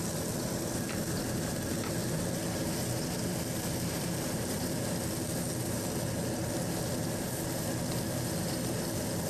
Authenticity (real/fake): real